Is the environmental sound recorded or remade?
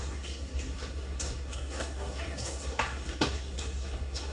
remade